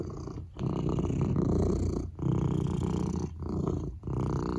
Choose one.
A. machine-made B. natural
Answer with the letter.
B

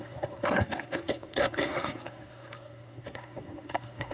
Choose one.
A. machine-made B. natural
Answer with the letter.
A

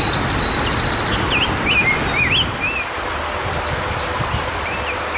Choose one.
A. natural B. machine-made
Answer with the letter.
A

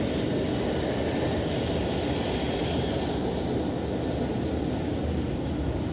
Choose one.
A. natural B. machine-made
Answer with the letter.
A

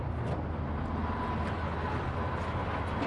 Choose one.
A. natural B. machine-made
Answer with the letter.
A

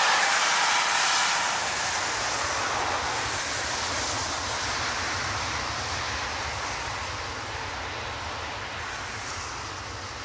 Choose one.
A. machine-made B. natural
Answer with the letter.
B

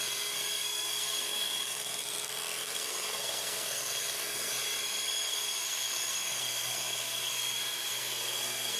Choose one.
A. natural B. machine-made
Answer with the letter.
B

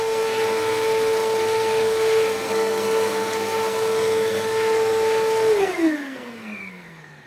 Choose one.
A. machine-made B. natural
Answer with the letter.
A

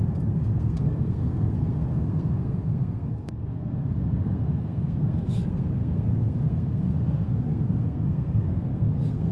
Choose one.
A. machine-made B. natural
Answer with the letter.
A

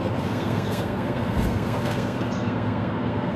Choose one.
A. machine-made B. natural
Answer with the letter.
A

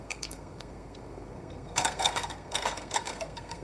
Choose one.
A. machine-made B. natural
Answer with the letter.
A